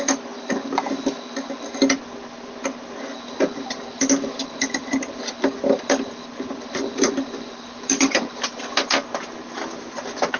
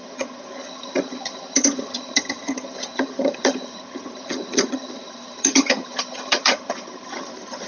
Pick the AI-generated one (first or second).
second